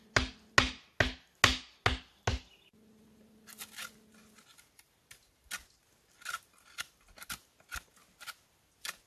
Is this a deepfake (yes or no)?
no